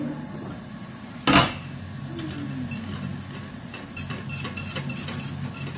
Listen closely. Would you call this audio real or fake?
real